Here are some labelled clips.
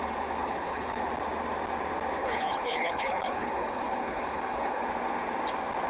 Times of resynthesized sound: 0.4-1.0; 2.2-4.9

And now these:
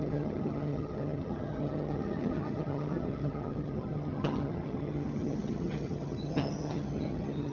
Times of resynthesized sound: 0.0-7.5

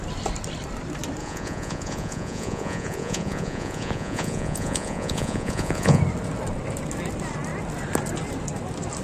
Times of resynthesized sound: 1.2-6.0